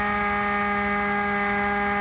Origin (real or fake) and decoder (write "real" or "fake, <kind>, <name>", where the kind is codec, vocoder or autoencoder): real